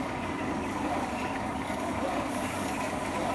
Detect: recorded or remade remade